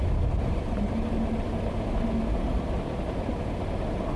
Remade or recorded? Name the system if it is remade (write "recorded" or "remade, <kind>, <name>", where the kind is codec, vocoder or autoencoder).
recorded